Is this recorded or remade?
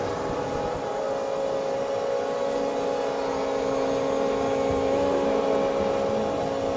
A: recorded